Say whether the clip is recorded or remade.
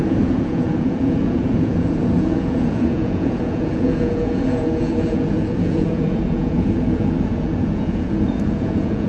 remade